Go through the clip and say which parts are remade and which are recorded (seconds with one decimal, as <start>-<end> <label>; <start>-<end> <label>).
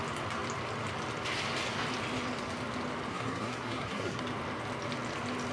0.0-3.1 recorded; 3.1-4.2 remade; 4.2-5.5 recorded